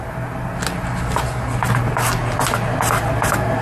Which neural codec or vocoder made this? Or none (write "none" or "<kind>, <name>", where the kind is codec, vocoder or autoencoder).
none